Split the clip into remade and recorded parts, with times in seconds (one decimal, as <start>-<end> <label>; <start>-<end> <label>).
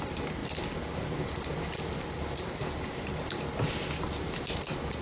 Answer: 0.0-5.0 recorded